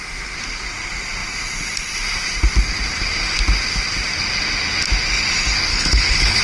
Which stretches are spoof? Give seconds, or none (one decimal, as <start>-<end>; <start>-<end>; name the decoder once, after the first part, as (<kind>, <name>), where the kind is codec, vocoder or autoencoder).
5.7-6.4 (codec, HILCodec)